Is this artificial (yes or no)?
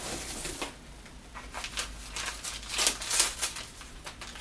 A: no